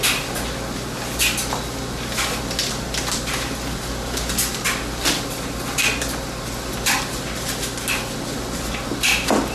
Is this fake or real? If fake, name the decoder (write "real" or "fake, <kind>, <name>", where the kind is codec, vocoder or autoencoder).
real